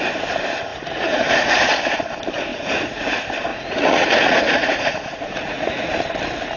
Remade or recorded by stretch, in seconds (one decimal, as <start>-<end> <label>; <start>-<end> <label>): 0.0-0.7 recorded; 0.7-1.7 remade; 1.7-2.5 recorded; 2.5-3.1 remade; 3.1-3.5 recorded; 3.5-5.9 remade; 5.9-6.6 recorded